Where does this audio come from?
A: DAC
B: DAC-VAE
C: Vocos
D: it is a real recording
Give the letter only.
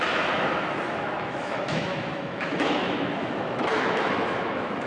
B